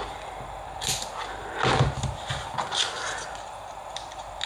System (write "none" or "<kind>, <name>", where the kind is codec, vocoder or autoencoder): none